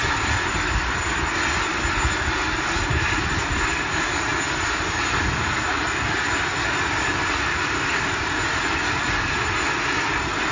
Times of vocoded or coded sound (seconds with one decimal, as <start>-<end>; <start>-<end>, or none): none